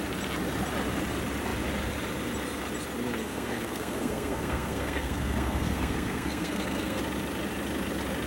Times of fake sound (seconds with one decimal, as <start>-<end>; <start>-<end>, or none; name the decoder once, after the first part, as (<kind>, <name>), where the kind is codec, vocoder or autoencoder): 3.2-7.0 (codec, SNAC)